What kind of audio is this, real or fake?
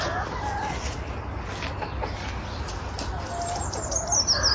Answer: real